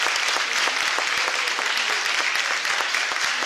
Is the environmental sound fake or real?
real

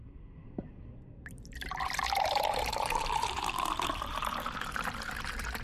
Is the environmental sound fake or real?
fake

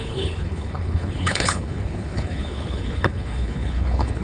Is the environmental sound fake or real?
fake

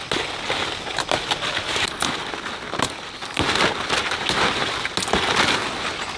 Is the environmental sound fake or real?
real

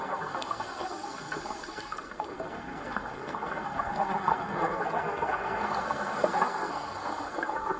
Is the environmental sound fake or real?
fake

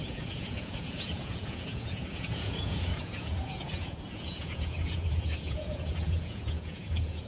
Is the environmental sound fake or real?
fake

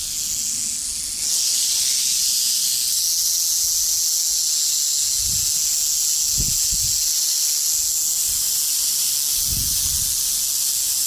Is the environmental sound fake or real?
real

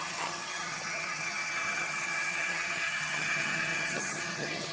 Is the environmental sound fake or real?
fake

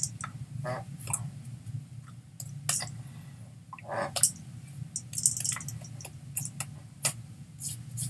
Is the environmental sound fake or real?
real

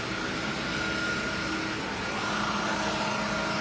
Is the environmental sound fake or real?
real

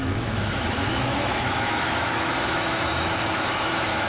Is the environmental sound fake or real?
fake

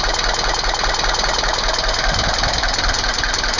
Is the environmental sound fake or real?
real